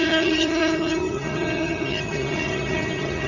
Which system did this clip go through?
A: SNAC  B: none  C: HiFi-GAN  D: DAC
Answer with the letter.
C